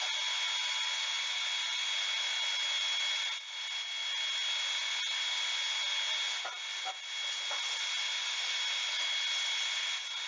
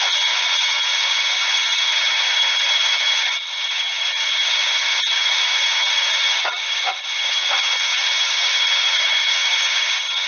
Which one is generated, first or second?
second